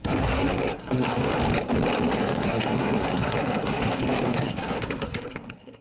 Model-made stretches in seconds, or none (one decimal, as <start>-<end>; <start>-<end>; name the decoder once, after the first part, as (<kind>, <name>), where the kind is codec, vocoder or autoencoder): 0.0-1.3 (codec, SNAC); 2.1-5.8